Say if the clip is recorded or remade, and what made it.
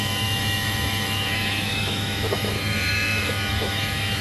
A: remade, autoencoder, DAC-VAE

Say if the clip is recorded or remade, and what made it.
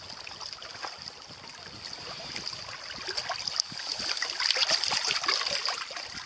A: recorded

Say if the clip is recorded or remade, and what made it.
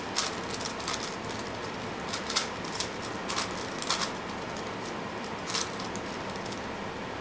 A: recorded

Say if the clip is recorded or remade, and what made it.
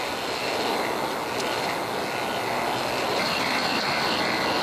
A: recorded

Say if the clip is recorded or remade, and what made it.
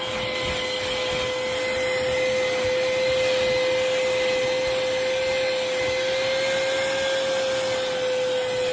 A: recorded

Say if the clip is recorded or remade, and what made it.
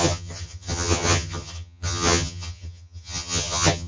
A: remade, vocoder, HiFi-GAN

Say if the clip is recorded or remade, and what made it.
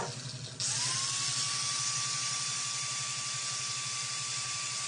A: recorded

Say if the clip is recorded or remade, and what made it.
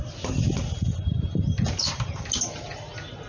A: recorded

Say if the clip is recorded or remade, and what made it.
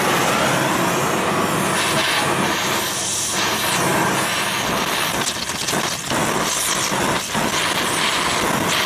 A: recorded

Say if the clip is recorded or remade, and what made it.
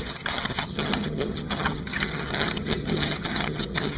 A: remade, vocoder, HiFi-GAN